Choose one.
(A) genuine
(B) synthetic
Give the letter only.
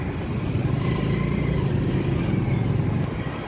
A